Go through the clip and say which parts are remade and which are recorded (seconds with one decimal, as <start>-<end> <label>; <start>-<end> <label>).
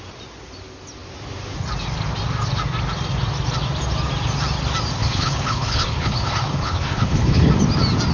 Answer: 0.0-5.0 recorded; 5.0-7.5 remade; 7.5-8.1 recorded